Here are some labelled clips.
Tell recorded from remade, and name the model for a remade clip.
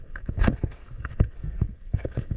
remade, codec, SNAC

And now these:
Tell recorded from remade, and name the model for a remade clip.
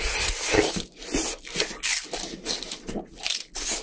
recorded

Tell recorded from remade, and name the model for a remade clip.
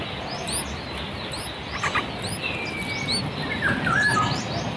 recorded